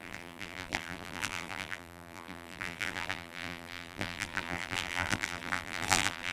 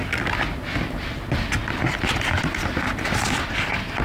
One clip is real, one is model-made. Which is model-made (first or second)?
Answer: first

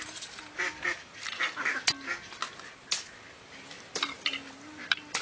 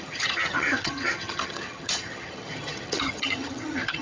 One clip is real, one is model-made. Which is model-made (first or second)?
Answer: second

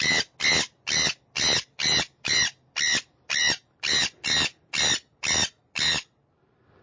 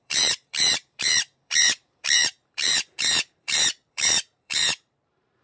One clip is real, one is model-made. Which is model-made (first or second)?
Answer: second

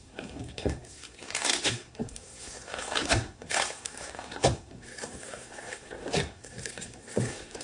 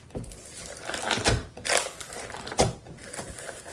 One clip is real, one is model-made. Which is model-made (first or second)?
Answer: first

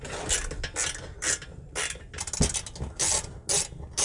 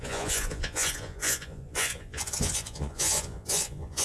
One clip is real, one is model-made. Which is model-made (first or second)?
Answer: second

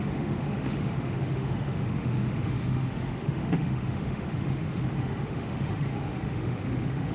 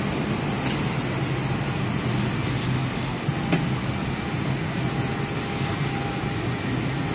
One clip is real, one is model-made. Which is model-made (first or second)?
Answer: first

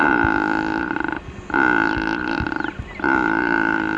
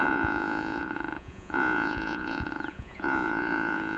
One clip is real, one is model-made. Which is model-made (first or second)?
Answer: second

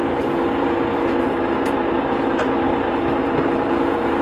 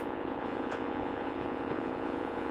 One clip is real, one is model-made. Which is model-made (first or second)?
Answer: second